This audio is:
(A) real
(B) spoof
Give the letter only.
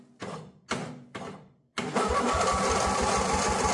A